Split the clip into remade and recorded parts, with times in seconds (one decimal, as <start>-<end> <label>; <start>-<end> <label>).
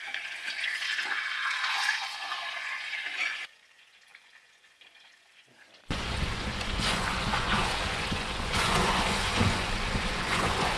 0.0-10.8 remade